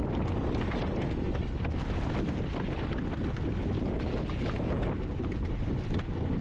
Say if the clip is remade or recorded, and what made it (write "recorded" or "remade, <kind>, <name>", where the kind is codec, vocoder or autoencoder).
recorded